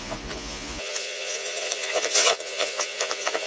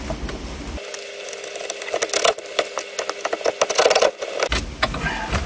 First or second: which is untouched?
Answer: second